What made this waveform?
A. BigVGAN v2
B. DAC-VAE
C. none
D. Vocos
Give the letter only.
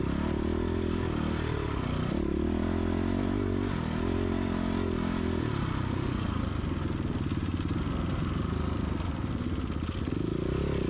C